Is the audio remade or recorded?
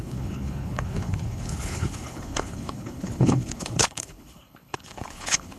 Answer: remade